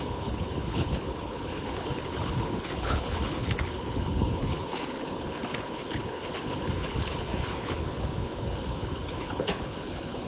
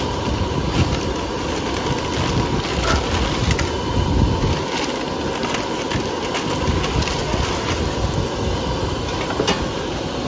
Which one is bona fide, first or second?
second